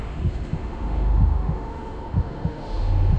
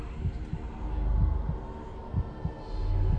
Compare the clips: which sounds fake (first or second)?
first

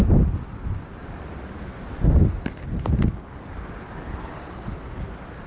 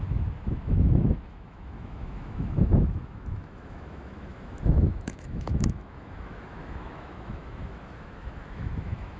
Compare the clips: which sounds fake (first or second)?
second